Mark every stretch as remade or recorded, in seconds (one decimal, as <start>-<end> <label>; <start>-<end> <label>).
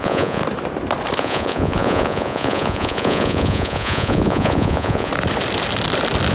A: 0.0-0.4 remade; 0.4-1.2 recorded; 1.2-5.1 remade; 5.1-6.3 recorded